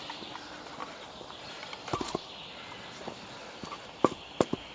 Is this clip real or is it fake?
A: real